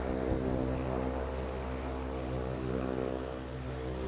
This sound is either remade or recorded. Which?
recorded